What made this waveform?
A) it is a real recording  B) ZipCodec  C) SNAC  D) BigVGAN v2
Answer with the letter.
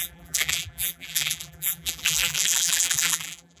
D